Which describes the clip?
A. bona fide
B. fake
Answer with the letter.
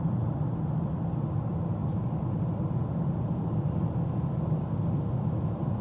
A